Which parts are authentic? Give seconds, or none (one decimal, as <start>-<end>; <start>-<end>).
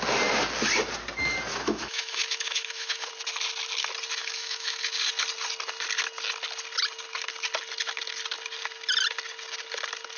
0.0-1.5; 3.1-4.2; 4.8-10.2